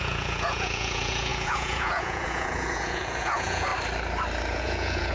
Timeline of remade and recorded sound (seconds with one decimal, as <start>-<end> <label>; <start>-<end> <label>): 0.0-3.7 remade; 3.7-4.5 recorded; 4.5-5.1 remade